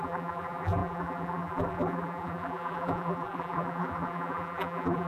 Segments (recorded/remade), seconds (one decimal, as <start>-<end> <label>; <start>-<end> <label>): 0.0-5.1 remade